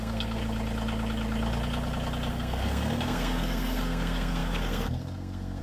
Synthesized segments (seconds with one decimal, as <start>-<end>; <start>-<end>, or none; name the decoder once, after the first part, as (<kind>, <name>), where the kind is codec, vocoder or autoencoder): 0.0-0.4 (codec, SNAC); 2.3-5.6